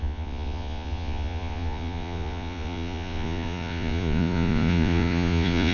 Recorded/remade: remade